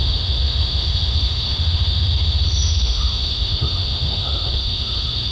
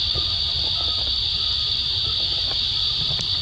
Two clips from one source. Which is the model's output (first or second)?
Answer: first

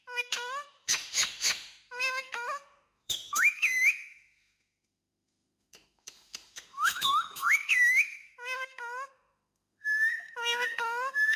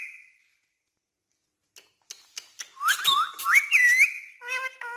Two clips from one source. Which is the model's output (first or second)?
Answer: first